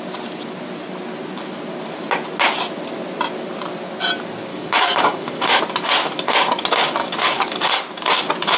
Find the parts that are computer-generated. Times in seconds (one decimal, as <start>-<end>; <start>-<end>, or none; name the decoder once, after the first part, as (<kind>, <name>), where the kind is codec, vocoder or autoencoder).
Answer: 4.5-5.6 (codec, DAC); 7.0-7.8